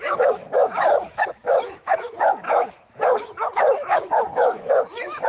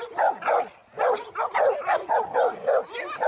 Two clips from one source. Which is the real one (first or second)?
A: second